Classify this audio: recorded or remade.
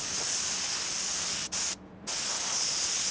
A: recorded